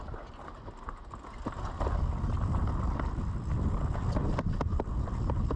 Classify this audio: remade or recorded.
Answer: recorded